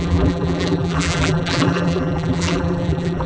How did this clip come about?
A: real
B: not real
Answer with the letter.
B